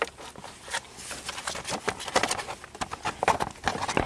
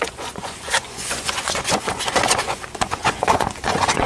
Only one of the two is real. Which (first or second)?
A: first